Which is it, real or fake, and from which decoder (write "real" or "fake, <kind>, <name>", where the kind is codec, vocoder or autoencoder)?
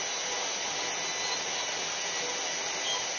real